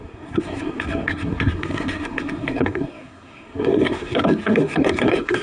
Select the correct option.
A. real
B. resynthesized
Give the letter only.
B